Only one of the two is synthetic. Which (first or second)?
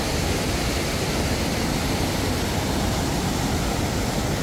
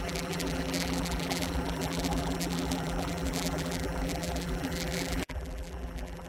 second